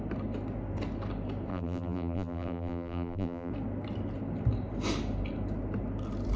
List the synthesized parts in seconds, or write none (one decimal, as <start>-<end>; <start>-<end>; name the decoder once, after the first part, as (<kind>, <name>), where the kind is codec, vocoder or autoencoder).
1.5-3.5 (vocoder, BigVGAN v2)